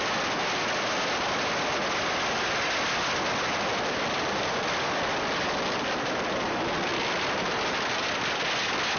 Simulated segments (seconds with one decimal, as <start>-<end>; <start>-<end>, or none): none